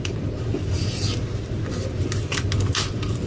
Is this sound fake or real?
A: real